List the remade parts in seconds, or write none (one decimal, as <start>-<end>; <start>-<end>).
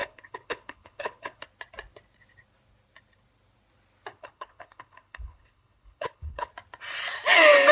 0.0-1.4; 4.1-6.5